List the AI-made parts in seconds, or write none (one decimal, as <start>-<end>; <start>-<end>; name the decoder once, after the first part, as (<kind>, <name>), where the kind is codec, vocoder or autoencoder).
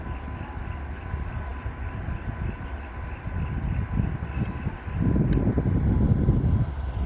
none